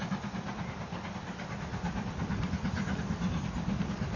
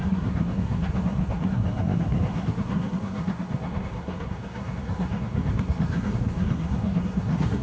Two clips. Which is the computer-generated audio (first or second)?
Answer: second